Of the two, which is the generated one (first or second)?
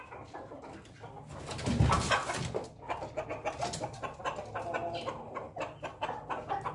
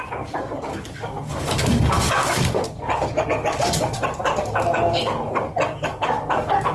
second